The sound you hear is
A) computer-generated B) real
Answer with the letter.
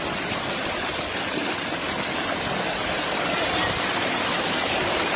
A